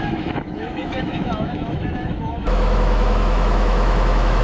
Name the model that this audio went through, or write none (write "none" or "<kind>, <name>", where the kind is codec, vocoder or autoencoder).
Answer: autoencoder, DAC-VAE